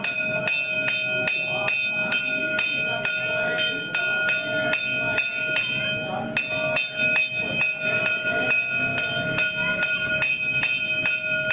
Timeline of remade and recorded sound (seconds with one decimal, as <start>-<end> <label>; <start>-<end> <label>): 0.0-11.5 recorded